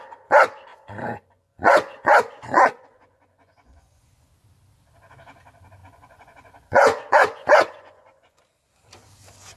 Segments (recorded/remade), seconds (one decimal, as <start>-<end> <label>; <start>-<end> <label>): 0.0-0.7 recorded; 0.7-4.3 remade; 4.3-5.8 recorded; 5.8-8.4 remade; 8.4-9.6 recorded